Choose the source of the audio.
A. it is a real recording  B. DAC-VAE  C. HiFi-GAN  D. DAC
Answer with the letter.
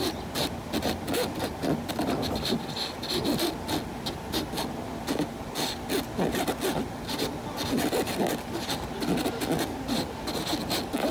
A